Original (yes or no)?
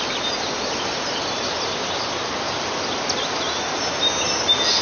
yes